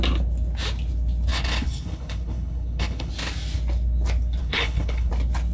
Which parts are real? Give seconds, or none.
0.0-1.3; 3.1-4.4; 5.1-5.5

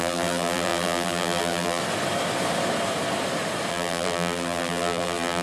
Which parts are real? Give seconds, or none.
1.8-3.7

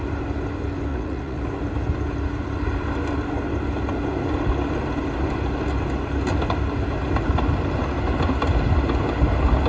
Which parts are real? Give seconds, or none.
0.0-0.9; 1.4-9.7

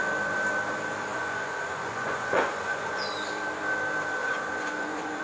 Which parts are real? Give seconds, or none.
0.0-1.1; 3.0-4.2

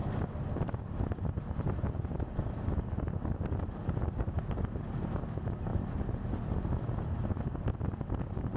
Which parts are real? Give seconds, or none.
0.0-8.6

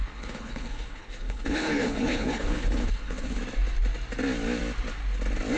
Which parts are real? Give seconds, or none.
3.4-5.6

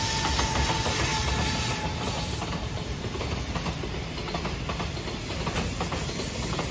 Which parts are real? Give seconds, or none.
0.0-6.7